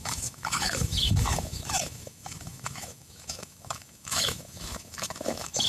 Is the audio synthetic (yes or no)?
yes